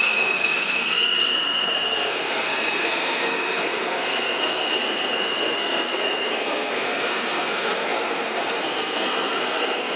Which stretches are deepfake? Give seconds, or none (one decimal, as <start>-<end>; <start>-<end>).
0.0-10.0